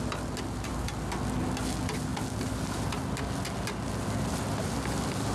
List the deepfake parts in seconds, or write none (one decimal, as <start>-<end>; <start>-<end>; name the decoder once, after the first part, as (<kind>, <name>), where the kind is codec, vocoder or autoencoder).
none